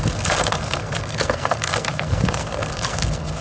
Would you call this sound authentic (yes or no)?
no